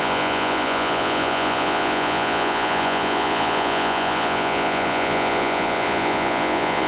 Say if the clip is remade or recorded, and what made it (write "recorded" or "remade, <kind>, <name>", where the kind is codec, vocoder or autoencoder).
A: remade, vocoder, Vocos